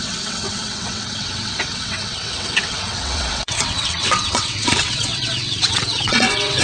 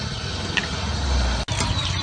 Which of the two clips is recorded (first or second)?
second